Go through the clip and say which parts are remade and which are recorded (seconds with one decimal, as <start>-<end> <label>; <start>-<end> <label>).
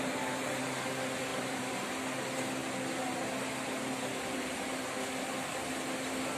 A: 0.0-1.3 recorded; 1.3-1.9 remade; 1.9-6.4 recorded